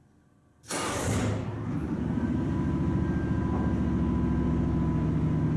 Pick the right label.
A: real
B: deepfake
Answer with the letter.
A